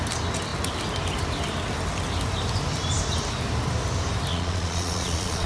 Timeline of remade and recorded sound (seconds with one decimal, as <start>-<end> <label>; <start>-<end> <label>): 0.0-4.3 recorded; 4.3-5.5 remade